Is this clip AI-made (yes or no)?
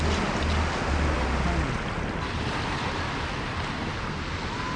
no